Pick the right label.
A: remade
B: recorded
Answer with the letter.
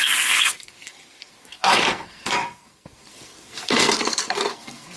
A